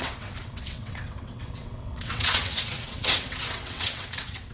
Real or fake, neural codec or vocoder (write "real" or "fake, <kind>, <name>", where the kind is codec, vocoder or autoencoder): fake, vocoder, WaveNeXt